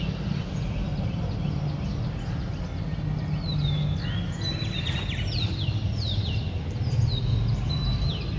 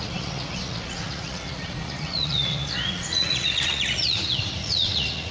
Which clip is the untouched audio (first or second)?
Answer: first